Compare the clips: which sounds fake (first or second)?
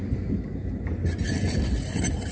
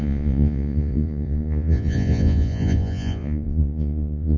second